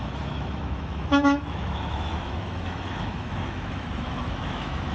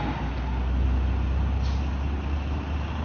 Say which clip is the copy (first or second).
first